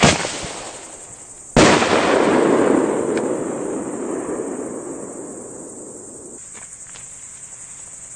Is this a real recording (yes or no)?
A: yes